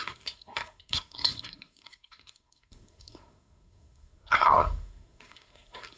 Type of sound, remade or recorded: remade